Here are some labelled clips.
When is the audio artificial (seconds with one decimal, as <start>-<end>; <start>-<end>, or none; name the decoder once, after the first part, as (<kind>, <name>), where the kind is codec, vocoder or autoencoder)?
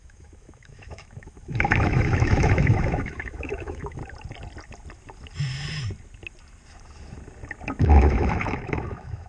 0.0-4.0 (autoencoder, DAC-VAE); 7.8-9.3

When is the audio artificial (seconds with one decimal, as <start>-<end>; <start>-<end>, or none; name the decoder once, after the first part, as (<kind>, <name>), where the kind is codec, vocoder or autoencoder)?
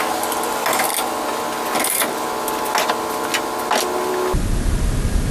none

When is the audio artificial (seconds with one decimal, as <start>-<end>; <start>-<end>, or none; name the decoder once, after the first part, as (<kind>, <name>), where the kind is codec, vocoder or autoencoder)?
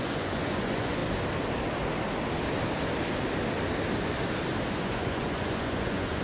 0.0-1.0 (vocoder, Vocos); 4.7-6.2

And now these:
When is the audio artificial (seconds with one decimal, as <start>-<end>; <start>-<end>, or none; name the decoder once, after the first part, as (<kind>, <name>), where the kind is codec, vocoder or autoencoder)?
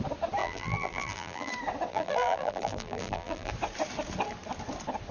0.4-1.5 (vocoder, BigVGAN v2); 1.9-3.5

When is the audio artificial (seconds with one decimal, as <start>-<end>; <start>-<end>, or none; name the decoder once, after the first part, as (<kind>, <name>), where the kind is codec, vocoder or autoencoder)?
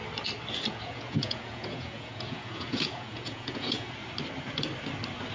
0.7-3.9 (vocoder, Vocos)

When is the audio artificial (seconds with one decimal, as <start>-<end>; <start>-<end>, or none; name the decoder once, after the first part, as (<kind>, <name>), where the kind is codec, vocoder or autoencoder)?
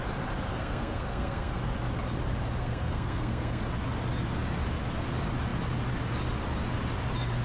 0.5-1.6 (codec, SNAC); 2.6-3.6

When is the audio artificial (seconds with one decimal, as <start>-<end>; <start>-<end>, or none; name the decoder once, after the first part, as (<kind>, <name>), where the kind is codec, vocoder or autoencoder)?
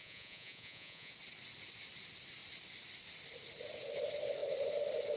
0.0-1.1 (vocoder, Vocos)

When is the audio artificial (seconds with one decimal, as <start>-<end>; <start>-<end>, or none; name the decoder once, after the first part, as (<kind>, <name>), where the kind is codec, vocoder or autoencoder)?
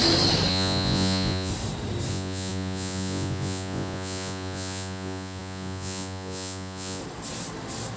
0.5-1.5 (vocoder, Vocos); 2.1-7.0